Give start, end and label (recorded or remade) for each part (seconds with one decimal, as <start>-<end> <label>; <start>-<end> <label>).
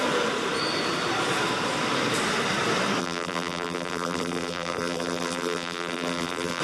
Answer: 0.0-3.0 recorded; 3.0-6.6 remade